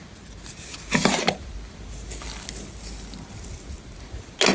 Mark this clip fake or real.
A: real